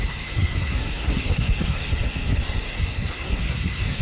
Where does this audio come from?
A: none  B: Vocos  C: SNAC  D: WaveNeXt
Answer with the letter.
C